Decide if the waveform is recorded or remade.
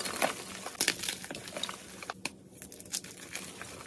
recorded